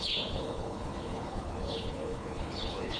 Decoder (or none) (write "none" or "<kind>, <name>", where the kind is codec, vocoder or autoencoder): codec, HILCodec